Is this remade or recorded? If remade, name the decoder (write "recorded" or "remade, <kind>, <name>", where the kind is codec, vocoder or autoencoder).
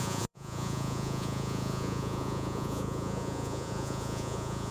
remade, vocoder, Vocos